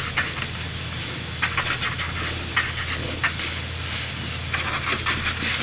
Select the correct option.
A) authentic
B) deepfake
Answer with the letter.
A